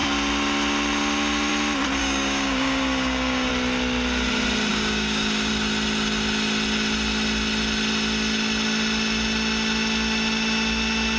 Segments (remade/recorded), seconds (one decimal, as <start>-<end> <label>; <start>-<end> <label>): 0.0-2.0 recorded; 2.0-3.5 remade; 3.5-4.7 recorded; 4.7-5.5 remade; 5.5-11.2 recorded